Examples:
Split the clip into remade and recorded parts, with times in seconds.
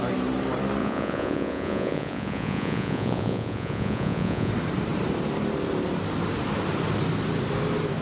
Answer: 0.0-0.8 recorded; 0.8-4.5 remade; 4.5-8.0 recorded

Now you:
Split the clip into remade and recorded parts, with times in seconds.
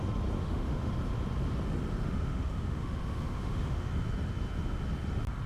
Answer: 0.0-0.4 recorded; 0.4-0.9 remade; 0.9-1.9 recorded; 1.9-3.9 remade; 3.9-5.5 recorded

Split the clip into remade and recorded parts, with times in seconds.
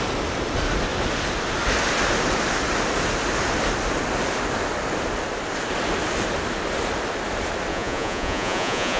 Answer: 0.0-7.7 recorded; 7.7-9.0 remade